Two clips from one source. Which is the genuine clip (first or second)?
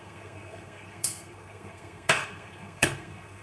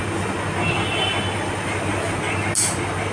second